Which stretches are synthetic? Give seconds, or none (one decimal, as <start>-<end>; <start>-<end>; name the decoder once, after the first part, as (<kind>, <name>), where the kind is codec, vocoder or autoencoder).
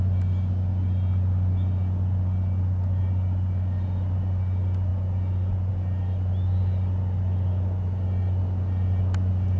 none